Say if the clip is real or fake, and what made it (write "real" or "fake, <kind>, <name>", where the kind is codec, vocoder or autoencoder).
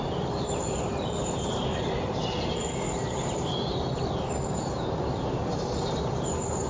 fake, vocoder, BigVGAN v2